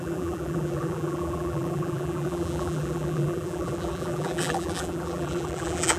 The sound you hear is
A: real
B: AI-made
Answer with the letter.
B